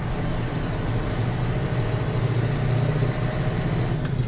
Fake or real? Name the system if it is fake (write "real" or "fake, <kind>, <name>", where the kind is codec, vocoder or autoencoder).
real